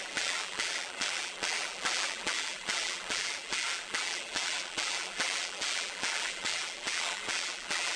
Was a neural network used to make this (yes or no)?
yes